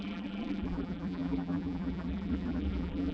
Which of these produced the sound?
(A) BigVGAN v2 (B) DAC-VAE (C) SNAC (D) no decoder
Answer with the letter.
A